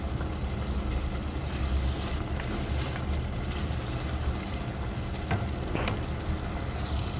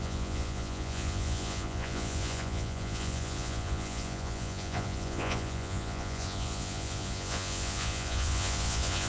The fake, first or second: second